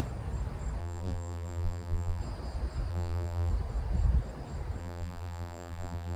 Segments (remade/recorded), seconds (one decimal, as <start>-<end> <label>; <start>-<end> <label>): 0.0-0.8 recorded; 0.8-2.2 remade; 2.2-2.9 recorded; 2.9-3.5 remade; 3.5-4.8 recorded; 4.8-6.2 remade